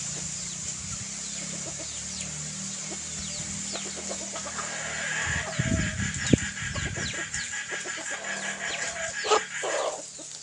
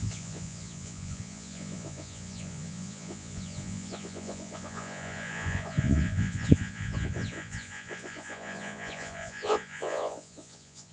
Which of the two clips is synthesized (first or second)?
second